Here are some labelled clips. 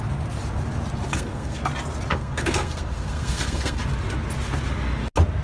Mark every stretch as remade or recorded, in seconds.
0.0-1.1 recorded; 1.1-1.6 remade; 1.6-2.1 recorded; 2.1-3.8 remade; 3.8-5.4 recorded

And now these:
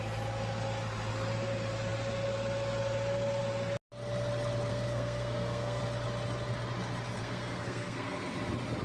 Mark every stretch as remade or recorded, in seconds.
0.0-4.7 recorded; 4.7-5.8 remade; 5.8-7.2 recorded; 7.2-8.2 remade; 8.2-8.8 recorded

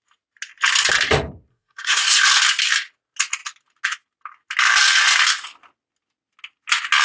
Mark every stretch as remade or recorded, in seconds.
0.0-1.5 recorded; 1.5-2.2 remade; 2.2-7.0 recorded

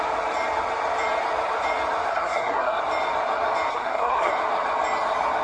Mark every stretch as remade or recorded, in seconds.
0.0-2.1 recorded; 2.1-2.8 remade; 2.8-3.7 recorded; 3.7-4.3 remade; 4.3-5.4 recorded